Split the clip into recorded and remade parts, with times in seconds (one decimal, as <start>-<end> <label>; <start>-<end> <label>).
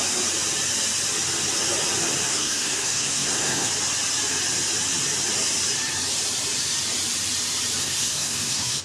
0.0-2.3 recorded; 2.3-3.7 remade; 3.7-7.8 recorded; 7.8-8.8 remade